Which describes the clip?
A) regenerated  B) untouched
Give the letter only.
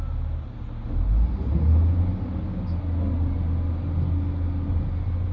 B